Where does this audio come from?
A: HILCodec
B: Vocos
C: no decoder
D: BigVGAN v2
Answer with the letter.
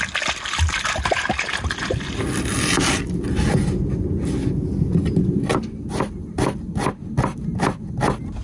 C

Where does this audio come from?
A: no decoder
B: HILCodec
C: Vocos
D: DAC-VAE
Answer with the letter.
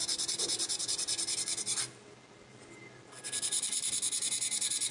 A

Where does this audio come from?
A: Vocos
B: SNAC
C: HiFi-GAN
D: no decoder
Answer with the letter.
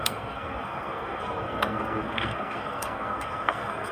B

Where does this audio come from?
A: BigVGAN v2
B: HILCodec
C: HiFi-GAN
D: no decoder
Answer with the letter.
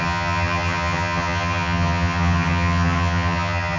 C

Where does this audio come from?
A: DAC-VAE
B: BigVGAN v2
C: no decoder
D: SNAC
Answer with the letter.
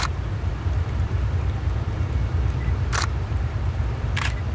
B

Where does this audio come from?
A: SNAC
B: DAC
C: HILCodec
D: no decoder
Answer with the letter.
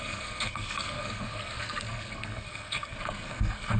A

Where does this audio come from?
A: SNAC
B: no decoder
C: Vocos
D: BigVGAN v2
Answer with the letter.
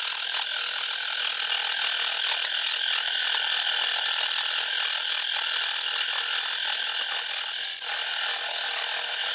B